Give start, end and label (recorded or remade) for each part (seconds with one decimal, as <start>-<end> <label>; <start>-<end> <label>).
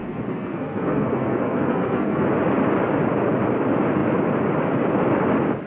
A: 0.0-2.3 remade; 2.3-5.7 recorded